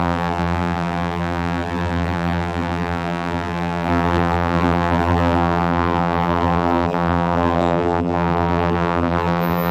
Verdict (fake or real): fake